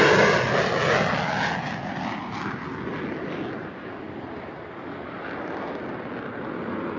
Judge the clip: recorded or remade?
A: recorded